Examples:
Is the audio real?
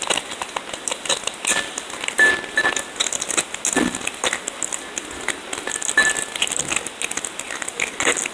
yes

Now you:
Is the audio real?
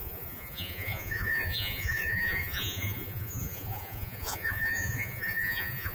no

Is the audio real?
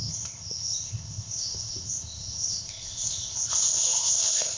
no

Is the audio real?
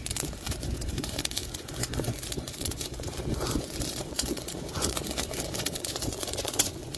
no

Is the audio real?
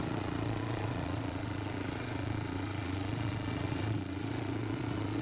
no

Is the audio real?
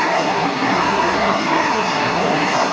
no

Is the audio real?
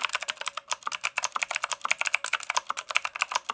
yes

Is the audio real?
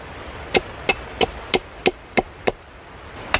yes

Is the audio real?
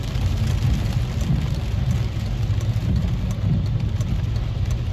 yes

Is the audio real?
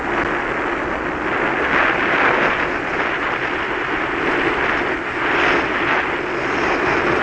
yes